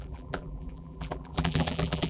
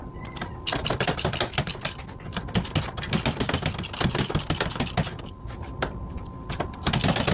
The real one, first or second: second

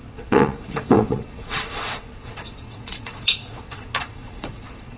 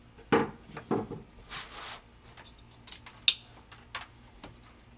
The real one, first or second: second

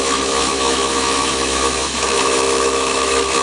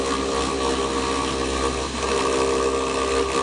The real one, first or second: second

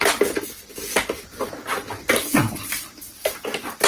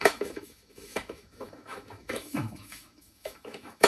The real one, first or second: first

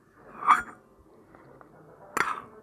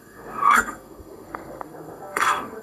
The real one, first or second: first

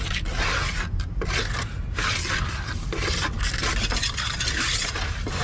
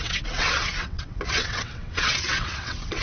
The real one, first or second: first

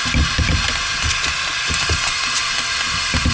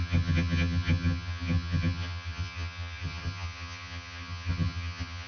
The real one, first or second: first